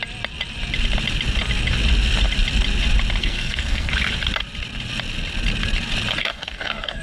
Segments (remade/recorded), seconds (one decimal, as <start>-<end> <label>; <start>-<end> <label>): 0.0-3.2 recorded; 3.2-3.9 remade; 3.9-6.2 recorded; 6.2-7.0 remade

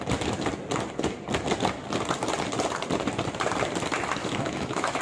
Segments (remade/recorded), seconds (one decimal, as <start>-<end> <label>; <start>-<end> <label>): 0.0-4.2 recorded; 4.2-5.0 remade

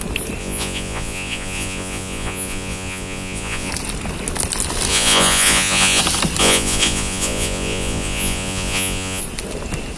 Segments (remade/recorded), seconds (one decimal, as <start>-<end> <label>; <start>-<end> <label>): 0.0-0.4 recorded; 0.4-3.7 remade; 3.7-4.9 recorded; 4.9-6.0 remade; 6.0-6.4 recorded; 6.4-9.2 remade; 9.2-10.0 recorded

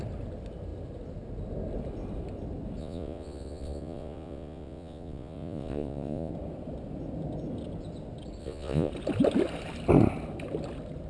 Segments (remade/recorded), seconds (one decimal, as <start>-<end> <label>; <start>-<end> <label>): 0.0-2.8 recorded; 2.8-6.3 remade; 6.3-8.4 recorded; 8.4-8.9 remade; 8.9-11.1 recorded

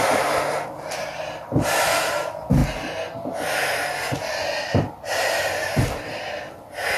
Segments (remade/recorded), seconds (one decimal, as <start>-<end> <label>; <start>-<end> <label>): 0.0-7.0 recorded

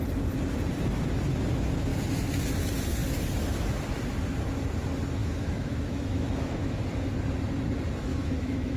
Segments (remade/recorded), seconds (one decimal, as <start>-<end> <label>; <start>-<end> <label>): 0.0-5.2 recorded; 5.2-6.8 remade; 6.8-8.1 recorded; 8.1-8.8 remade